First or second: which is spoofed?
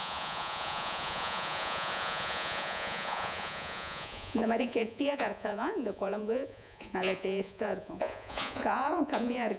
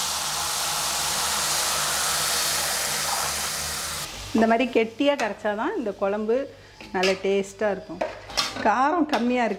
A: first